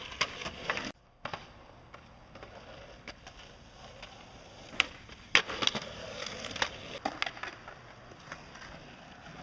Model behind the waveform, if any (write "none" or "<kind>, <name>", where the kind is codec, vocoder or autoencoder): none